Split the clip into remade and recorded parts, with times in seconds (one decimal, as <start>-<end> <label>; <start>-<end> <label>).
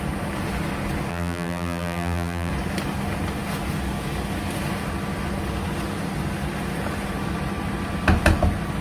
0.0-1.1 recorded; 1.1-2.5 remade; 2.5-8.8 recorded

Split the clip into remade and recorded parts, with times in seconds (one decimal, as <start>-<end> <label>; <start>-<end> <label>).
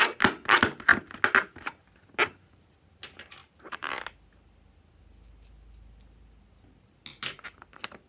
0.0-3.4 recorded; 3.4-3.9 remade; 3.9-8.1 recorded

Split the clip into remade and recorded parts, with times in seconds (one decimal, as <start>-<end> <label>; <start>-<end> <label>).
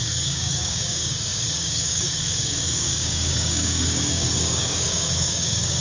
0.0-5.8 remade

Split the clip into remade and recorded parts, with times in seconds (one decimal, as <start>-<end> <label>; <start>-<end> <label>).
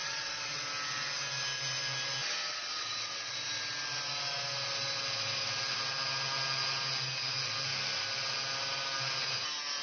0.0-0.6 remade; 0.6-2.5 recorded; 2.5-3.3 remade; 3.3-9.8 recorded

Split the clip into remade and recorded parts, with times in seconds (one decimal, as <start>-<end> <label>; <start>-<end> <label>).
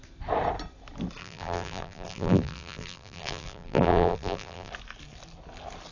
0.0-1.2 recorded; 1.2-4.7 remade; 4.7-5.9 recorded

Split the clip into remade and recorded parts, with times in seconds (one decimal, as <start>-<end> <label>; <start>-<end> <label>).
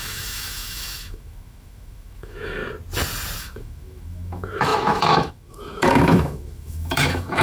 0.0-2.6 remade; 2.6-3.4 recorded; 3.4-7.4 remade